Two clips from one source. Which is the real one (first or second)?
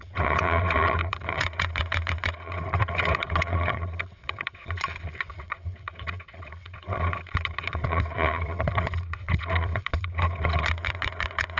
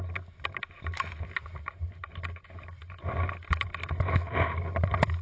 second